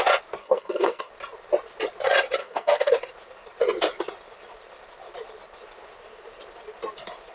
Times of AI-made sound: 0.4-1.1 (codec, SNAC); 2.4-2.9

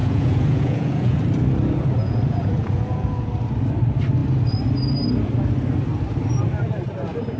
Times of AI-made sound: 0.0-1.2 (vocoder, Vocos); 2.0-3.3

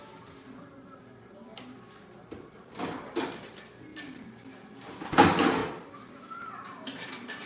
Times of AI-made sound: 0.0-7.5 (vocoder, BigVGAN v2)

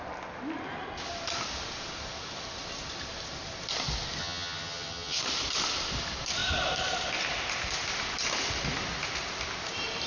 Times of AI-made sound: 4.2-5.2 (vocoder, HiFi-GAN)

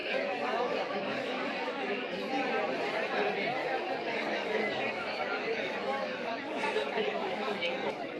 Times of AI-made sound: 0.0-2.3 (codec, DAC); 3.6-8.2

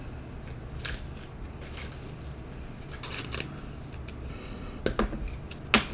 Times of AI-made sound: 4.3-4.8 (codec, ZipCodec)